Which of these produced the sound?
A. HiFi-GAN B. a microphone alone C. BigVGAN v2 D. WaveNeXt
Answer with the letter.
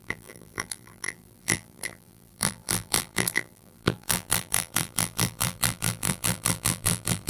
C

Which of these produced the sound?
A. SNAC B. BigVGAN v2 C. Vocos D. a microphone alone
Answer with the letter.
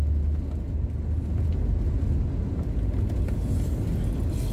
D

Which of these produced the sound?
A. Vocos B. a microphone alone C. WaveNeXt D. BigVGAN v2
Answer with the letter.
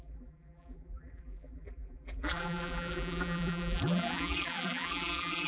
D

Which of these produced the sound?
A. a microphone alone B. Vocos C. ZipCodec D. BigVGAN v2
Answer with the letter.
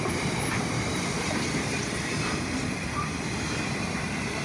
D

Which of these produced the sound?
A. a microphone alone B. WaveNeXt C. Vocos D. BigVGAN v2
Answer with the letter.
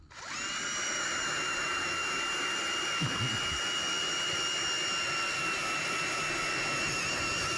A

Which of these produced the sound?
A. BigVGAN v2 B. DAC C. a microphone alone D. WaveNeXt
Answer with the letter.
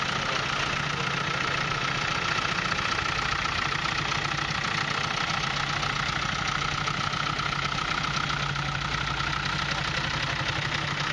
C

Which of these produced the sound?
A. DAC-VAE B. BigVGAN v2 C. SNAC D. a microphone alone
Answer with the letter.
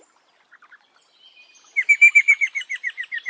D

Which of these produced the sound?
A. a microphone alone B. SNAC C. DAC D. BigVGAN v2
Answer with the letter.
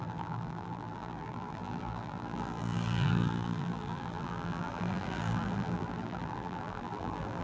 D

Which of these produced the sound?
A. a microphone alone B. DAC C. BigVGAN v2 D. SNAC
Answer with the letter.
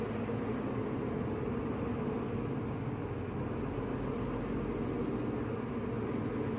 A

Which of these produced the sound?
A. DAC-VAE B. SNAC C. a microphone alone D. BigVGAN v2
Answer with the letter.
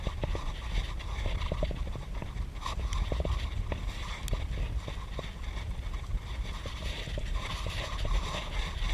C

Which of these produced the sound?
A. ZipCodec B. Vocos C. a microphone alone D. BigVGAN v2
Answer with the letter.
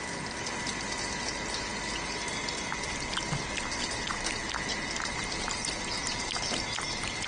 C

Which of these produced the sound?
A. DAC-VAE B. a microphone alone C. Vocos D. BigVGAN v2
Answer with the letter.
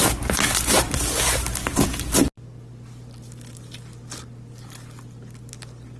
B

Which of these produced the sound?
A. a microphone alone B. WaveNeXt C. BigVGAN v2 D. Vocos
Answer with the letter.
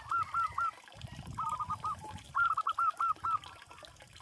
C